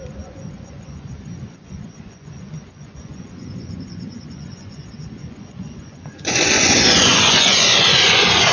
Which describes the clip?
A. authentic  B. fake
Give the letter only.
B